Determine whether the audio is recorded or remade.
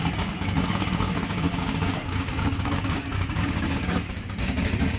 remade